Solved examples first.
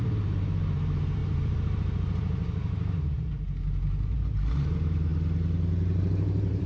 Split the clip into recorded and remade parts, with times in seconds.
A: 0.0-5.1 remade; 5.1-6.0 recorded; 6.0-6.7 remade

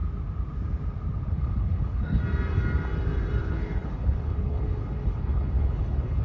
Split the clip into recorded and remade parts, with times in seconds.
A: 0.0-1.3 recorded; 1.3-2.2 remade; 2.2-3.4 recorded; 3.4-6.2 remade

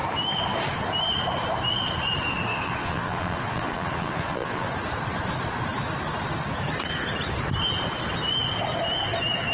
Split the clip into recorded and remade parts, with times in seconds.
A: 0.0-2.5 recorded; 2.5-4.7 remade; 4.7-9.5 recorded

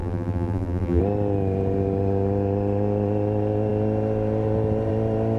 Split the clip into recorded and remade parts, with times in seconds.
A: 0.0-1.0 remade; 1.0-5.4 recorded

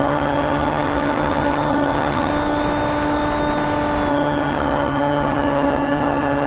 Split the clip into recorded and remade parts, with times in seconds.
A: 0.0-2.3 remade; 2.3-4.1 recorded; 4.1-6.5 remade